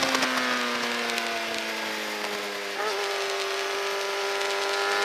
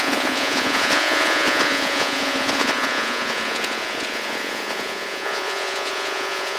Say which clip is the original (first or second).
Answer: first